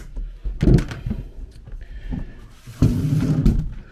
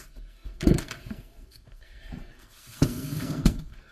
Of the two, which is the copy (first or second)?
second